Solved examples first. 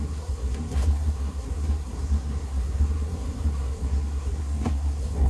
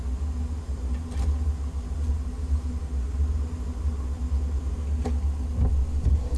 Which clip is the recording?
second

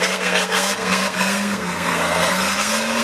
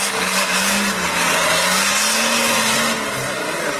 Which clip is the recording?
second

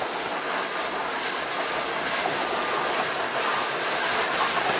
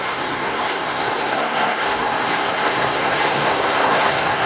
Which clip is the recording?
first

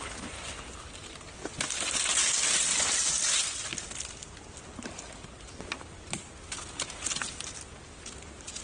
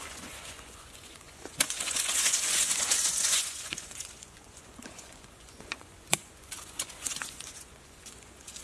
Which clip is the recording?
first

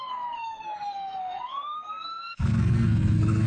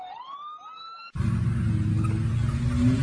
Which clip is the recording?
second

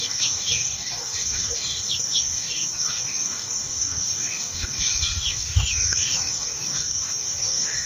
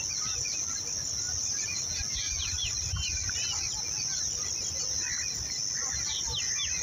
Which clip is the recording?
second